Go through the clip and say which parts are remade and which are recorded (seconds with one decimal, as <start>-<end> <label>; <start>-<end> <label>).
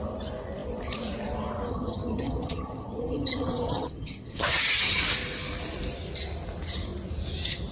0.0-1.7 recorded; 1.7-5.0 remade; 5.0-7.7 recorded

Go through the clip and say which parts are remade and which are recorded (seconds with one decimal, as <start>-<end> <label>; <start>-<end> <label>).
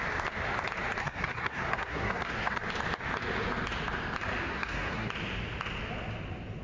0.0-1.0 recorded; 1.0-2.6 remade; 2.6-4.5 recorded; 4.5-5.1 remade; 5.1-6.6 recorded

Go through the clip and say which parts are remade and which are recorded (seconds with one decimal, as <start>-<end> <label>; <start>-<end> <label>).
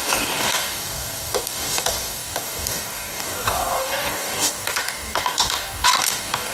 0.0-6.5 remade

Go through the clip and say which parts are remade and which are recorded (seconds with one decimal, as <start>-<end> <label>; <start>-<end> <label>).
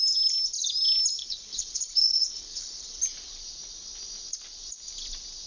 0.0-1.2 recorded; 1.2-3.0 remade; 3.0-5.5 recorded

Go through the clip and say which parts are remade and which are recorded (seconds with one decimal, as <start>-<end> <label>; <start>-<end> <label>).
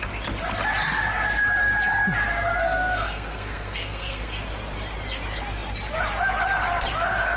0.0-2.6 recorded; 2.6-4.4 remade; 4.4-7.4 recorded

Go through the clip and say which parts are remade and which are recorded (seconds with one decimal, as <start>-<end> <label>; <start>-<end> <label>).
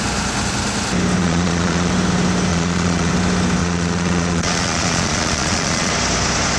0.0-1.2 recorded; 1.2-1.9 remade; 1.9-2.5 recorded; 2.5-3.1 remade; 3.1-3.6 recorded; 3.6-5.9 remade; 5.9-6.6 recorded